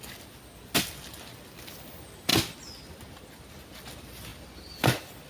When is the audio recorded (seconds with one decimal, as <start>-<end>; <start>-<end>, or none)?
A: 0.0-4.3